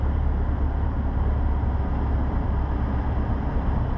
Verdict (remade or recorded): recorded